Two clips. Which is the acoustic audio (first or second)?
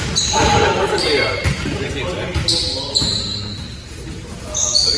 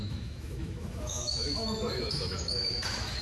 first